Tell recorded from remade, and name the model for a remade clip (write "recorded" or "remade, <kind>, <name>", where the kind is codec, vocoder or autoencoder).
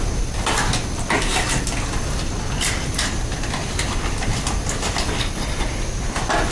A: recorded